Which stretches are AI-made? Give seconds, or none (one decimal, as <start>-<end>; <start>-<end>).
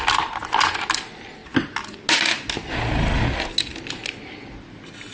none